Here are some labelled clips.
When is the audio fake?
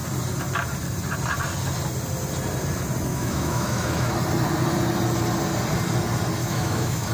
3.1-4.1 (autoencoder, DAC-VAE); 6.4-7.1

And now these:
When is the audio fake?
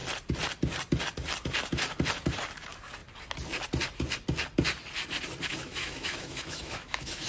5.5-7.3 (autoencoder, DAC-VAE)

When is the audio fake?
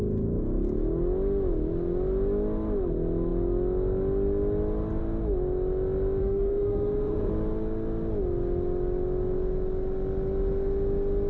6.2-7.3 (autoencoder, DAC-VAE)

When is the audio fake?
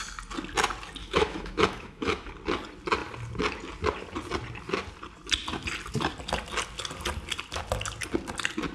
1.0-2.3 (autoencoder, DAC-VAE)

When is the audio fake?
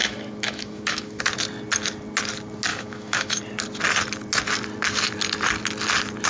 0.0-1.2 (autoencoder, DAC-VAE); 2.7-3.4